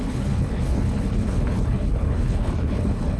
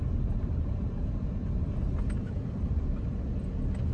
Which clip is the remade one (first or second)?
first